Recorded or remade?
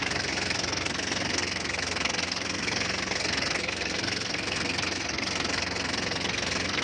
remade